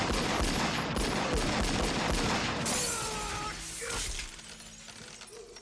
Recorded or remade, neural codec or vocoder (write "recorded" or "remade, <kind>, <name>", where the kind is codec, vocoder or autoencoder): recorded